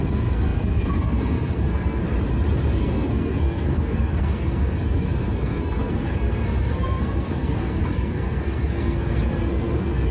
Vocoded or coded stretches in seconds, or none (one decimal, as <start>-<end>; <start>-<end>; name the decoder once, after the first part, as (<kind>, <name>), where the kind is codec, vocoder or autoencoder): 0.0-2.0 (codec, SNAC); 2.8-10.1